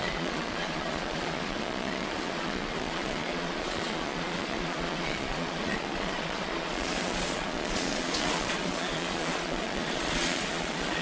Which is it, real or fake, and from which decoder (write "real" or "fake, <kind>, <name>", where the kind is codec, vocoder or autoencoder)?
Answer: fake, vocoder, Vocos